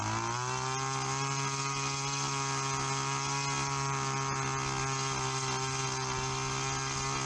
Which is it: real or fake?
real